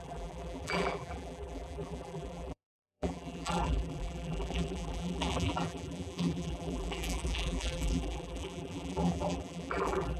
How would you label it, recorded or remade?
remade